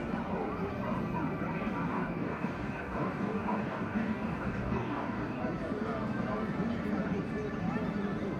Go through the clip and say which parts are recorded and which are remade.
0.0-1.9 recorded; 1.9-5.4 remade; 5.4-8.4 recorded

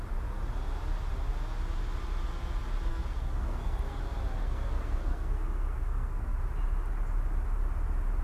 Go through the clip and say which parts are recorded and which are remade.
0.0-2.9 recorded; 2.9-4.0 remade; 4.0-4.4 recorded; 4.4-6.4 remade; 6.4-8.2 recorded

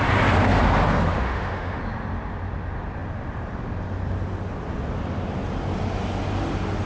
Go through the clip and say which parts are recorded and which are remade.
0.0-1.1 recorded; 1.1-1.8 remade; 1.8-6.9 recorded

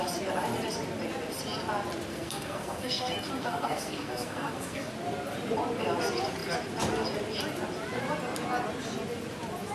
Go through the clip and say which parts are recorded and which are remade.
0.0-2.1 recorded; 2.1-4.9 remade; 4.9-9.7 recorded